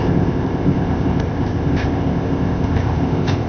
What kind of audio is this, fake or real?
fake